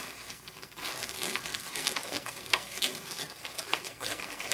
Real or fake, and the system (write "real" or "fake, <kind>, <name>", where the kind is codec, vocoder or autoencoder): fake, codec, SNAC